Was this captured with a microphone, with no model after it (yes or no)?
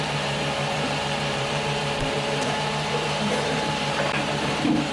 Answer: no